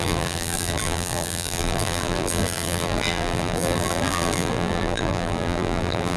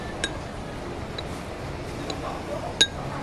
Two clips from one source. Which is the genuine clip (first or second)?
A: second